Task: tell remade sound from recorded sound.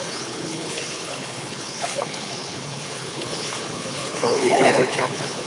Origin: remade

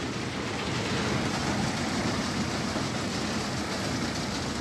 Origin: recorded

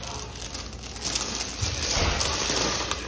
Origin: recorded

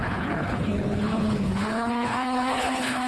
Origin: remade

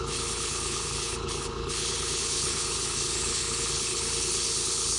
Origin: remade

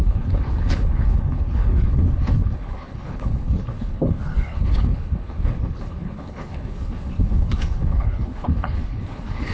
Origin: remade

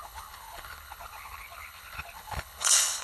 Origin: remade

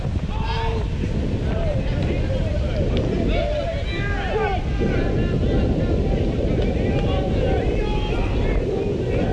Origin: recorded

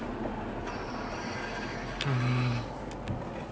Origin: recorded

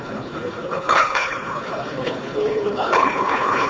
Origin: remade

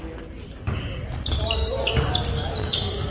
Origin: recorded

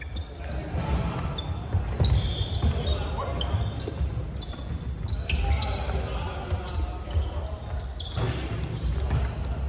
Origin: recorded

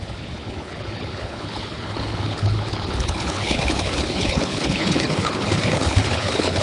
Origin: remade